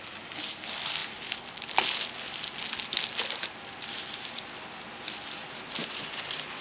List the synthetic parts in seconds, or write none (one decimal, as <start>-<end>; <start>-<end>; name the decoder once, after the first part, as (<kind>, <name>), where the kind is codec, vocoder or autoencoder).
5.8-6.6 (vocoder, Vocos)